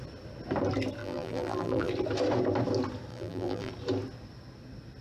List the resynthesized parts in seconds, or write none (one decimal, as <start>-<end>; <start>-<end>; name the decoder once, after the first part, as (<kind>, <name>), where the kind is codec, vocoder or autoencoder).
1.0-1.9 (vocoder, BigVGAN v2); 3.1-3.7